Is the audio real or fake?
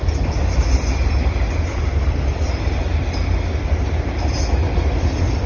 real